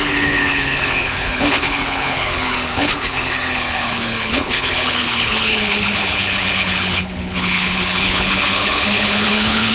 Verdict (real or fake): fake